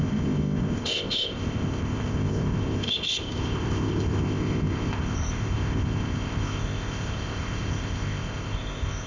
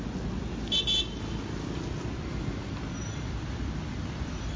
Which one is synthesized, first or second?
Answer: first